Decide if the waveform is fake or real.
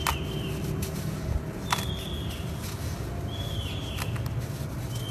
real